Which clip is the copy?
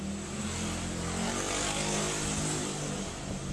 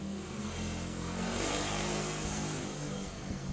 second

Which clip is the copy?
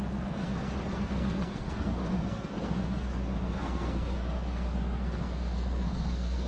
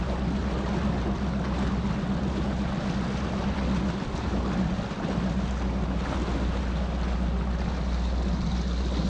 first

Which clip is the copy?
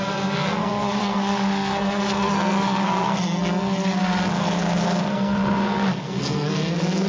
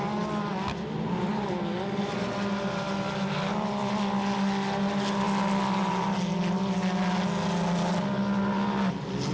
first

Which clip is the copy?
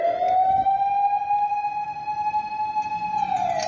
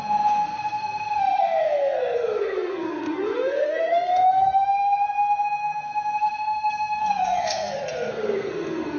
second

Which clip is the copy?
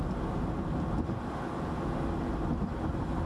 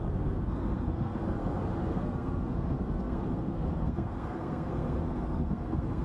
second